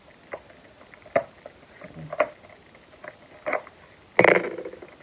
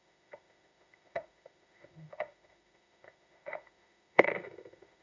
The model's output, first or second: second